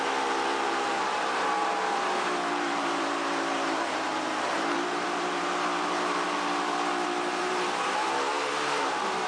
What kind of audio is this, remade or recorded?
remade